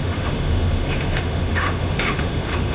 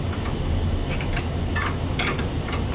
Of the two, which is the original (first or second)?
second